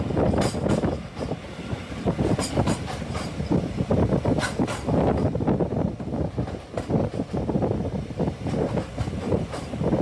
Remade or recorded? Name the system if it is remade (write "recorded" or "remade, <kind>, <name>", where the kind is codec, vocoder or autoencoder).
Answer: recorded